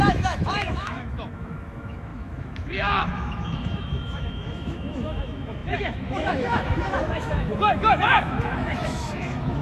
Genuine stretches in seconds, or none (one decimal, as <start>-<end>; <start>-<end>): none